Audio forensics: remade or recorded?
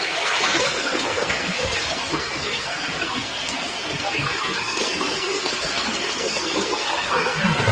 remade